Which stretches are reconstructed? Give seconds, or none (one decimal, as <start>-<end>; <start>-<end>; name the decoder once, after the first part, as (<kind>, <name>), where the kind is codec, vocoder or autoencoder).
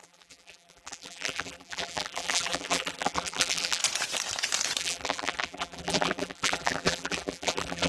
0.0-3.8 (vocoder, BigVGAN v2); 4.8-7.9